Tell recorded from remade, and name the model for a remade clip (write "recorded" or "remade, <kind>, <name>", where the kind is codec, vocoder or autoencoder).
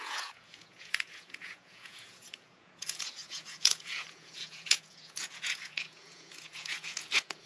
remade, vocoder, Vocos